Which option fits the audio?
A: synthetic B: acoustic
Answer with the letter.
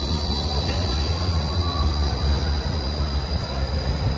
A